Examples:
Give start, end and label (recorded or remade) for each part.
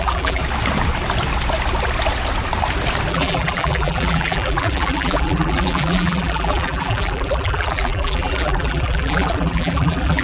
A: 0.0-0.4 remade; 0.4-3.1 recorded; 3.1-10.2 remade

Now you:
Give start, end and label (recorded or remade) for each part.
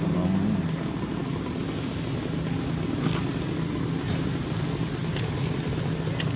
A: 0.0-6.4 recorded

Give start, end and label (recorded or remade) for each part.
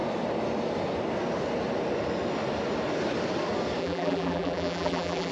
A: 0.0-3.8 recorded; 3.8-5.3 remade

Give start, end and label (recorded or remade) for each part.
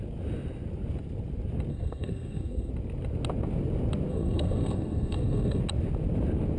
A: 0.0-1.7 recorded; 1.7-2.7 remade; 2.7-4.1 recorded; 4.1-5.6 remade; 5.6-6.6 recorded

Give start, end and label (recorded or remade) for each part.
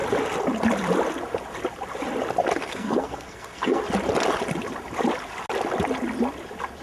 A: 0.0-2.6 recorded; 2.6-3.8 remade; 3.8-6.8 recorded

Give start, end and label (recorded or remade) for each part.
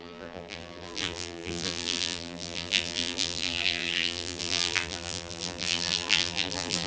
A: 0.0-6.9 remade